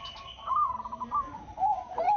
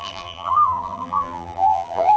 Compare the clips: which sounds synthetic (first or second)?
second